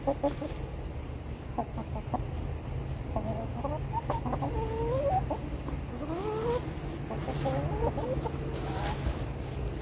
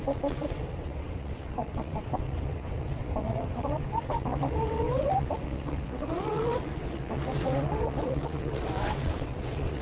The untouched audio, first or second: first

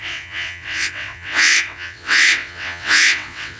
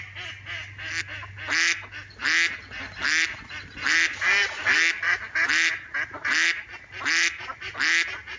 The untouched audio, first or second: second